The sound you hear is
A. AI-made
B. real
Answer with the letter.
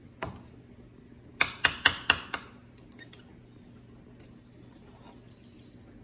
B